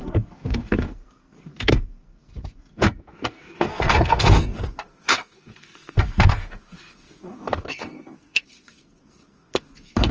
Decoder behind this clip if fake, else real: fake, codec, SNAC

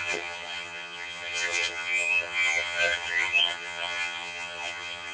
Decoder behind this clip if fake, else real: fake, vocoder, HiFi-GAN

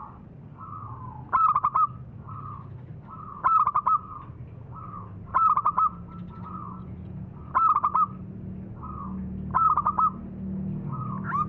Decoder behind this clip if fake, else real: real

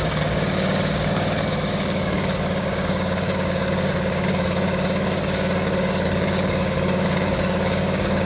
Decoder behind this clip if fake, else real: fake, codec, DAC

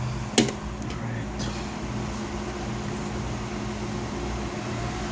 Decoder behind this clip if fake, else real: real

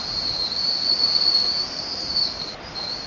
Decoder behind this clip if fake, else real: real